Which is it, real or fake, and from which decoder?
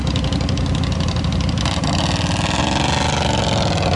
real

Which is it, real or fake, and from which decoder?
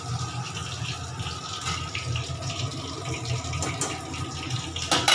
real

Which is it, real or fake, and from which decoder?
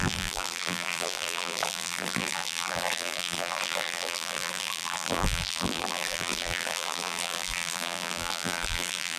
fake, vocoder, BigVGAN v2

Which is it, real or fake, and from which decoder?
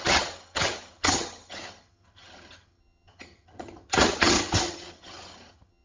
fake, vocoder, HiFi-GAN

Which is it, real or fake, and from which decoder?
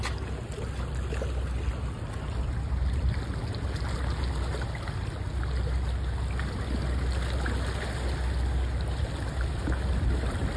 real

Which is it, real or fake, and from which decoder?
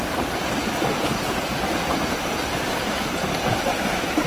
real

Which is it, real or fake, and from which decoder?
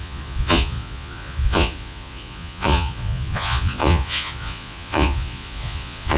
fake, vocoder, Vocos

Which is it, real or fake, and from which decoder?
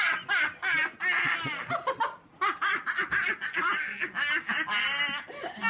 real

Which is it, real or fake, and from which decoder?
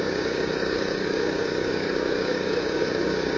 fake, codec, DAC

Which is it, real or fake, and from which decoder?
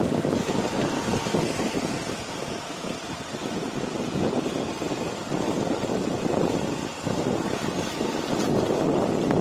real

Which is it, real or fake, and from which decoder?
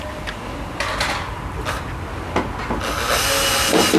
real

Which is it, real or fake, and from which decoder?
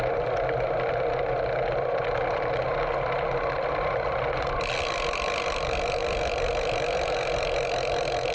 real